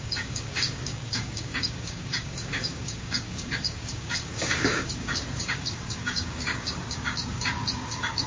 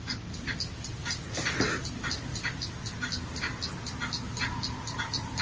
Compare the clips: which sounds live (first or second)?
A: second